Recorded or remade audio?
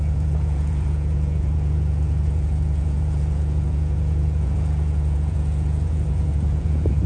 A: remade